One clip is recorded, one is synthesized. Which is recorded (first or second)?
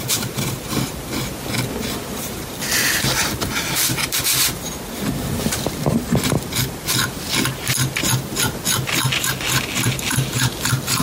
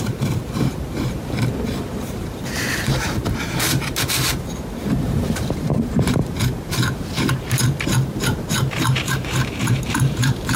first